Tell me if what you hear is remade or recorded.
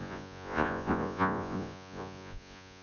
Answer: remade